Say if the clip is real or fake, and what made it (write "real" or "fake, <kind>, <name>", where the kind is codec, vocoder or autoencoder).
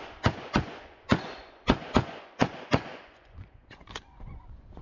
fake, vocoder, Vocos